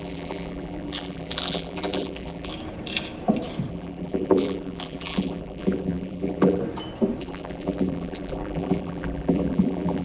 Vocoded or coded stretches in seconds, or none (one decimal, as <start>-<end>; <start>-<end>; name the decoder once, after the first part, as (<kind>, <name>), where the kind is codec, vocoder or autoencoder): 0.0-2.5 (vocoder, BigVGAN v2); 3.7-6.6; 7.2-10.0